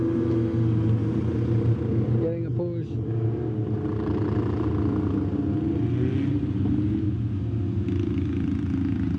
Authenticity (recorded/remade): recorded